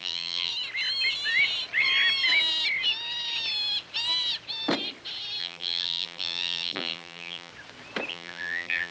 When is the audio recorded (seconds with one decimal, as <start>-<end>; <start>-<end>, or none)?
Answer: 0.5-5.4; 7.5-8.1

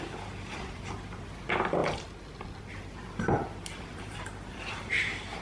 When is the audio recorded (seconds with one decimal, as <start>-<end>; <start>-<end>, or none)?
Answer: 0.0-3.9; 4.8-5.4

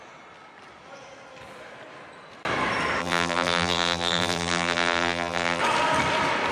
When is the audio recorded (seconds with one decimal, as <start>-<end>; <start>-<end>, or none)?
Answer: 0.0-3.0; 5.6-6.5

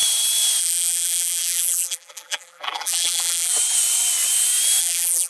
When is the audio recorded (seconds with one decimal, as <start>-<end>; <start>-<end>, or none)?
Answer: 0.0-0.6; 3.5-4.8

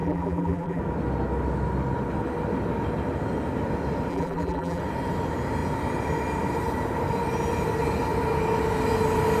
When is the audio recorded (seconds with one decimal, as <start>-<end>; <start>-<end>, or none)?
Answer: 0.8-4.1; 4.8-9.4

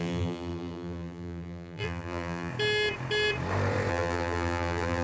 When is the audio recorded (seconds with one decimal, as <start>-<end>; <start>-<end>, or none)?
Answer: 2.5-3.9